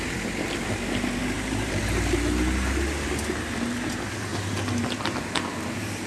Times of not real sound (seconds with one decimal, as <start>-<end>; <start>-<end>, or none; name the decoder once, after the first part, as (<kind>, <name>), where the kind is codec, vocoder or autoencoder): 1.2-1.8 (vocoder, BigVGAN v2)